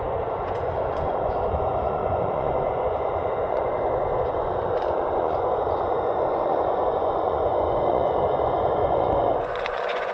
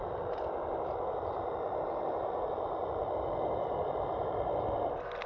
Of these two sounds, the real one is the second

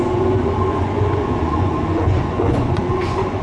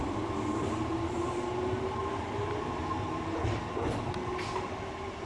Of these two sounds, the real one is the second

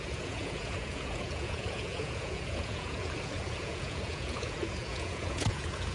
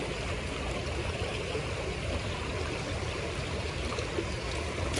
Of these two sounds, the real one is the second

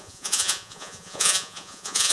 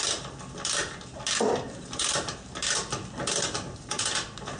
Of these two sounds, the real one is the second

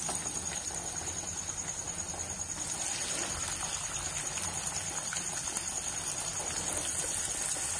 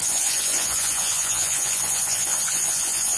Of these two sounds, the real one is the first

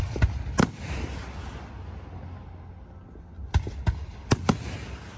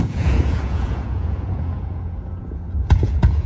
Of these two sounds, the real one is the first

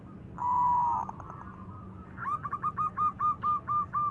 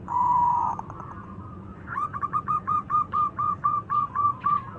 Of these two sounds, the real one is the first